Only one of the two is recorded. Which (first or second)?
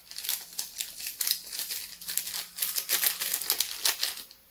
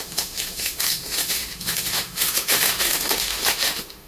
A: first